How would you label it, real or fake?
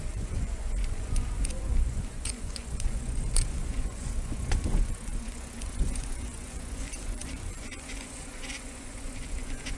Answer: fake